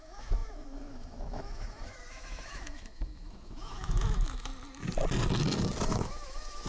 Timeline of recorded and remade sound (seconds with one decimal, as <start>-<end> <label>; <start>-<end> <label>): 0.0-4.5 remade; 4.5-5.9 recorded; 5.9-6.7 remade